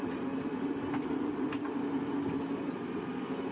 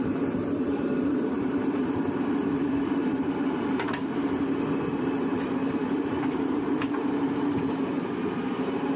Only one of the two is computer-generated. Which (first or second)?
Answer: second